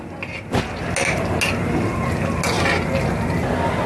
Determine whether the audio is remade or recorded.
recorded